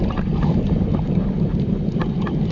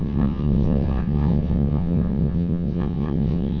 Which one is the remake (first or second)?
second